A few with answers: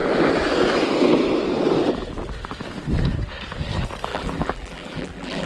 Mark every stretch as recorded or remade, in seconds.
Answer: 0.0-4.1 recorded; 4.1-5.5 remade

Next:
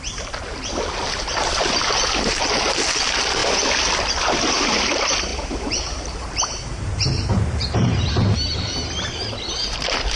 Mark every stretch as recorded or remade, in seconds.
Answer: 0.0-5.3 recorded; 5.3-8.1 remade; 8.1-10.2 recorded

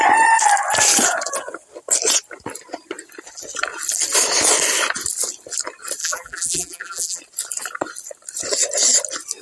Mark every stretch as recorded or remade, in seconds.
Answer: 0.0-6.0 recorded; 6.0-7.2 remade; 7.2-9.4 recorded

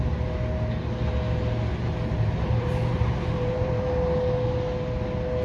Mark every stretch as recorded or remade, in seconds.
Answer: 0.0-1.7 recorded; 1.7-3.9 remade; 3.9-5.4 recorded